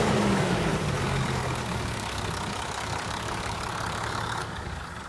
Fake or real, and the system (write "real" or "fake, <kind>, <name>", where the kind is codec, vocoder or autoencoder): fake, codec, DAC